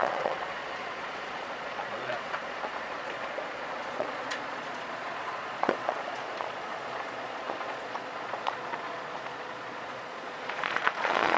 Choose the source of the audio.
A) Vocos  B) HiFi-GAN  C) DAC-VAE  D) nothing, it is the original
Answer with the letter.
A